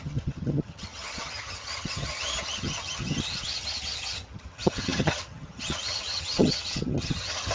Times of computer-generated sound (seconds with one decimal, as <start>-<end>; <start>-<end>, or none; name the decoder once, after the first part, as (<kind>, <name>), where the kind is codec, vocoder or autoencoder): 0.0-7.5 (vocoder, HiFi-GAN)

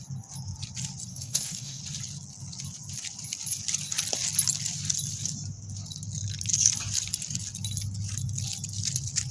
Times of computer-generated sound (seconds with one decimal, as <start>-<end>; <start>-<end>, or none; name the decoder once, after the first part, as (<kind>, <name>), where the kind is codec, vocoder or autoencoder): 1.1-1.8 (codec, DAC)

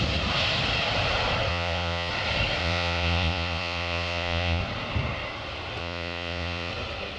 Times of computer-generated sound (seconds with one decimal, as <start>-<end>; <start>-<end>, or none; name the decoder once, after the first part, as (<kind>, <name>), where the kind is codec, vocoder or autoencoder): 1.5-2.1 (vocoder, Vocos); 2.6-4.6; 5.8-6.7

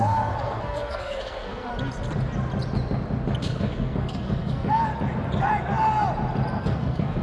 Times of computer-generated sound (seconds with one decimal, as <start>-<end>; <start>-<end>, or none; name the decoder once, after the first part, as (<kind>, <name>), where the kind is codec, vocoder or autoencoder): 0.0-1.7 (codec, SNAC); 3.4-4.9; 6.6-7.2

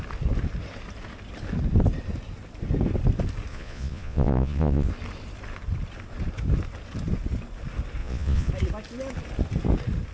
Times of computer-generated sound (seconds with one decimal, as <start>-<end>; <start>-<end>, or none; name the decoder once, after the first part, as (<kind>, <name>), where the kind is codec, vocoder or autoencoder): 3.5-4.9 (vocoder, Vocos); 8.0-8.5

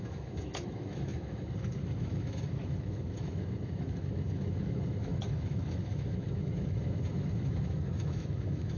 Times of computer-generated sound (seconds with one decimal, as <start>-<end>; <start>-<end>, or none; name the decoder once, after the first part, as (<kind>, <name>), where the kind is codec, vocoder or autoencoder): 0.0-8.8 (autoencoder, DAC-VAE)